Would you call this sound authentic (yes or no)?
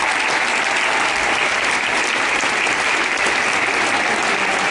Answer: yes